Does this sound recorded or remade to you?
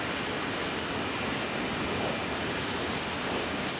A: recorded